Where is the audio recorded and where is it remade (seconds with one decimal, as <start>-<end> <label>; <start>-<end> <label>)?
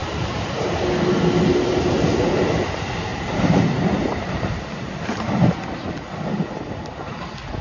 0.0-0.5 remade; 0.5-3.1 recorded; 3.1-5.5 remade; 5.5-7.6 recorded